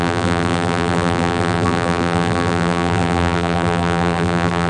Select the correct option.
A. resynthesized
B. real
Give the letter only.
A